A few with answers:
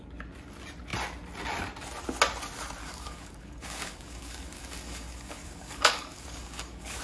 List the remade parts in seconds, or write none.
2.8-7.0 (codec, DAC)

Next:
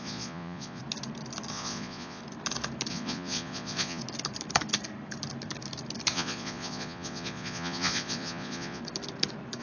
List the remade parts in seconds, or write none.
0.0-0.8 (vocoder, Vocos); 1.5-2.2; 2.9-4.0; 6.1-8.8

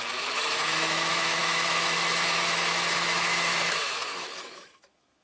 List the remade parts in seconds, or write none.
0.0-5.2 (autoencoder, DAC-VAE)

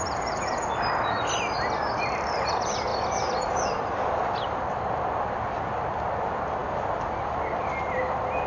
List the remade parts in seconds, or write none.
2.9-4.8 (vocoder, BigVGAN v2)

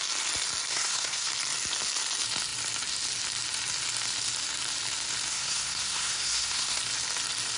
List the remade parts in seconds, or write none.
0.7-1.3 (codec, SNAC); 5.3-6.8